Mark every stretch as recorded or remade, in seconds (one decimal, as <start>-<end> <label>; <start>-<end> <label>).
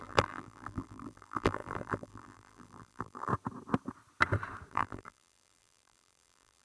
0.0-3.3 remade; 3.3-4.7 recorded; 4.7-6.6 remade